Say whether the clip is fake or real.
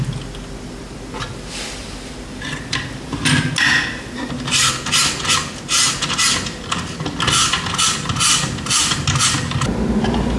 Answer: real